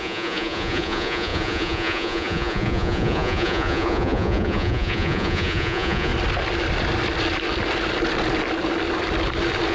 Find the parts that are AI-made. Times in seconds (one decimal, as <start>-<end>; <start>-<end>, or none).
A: 0.0-6.1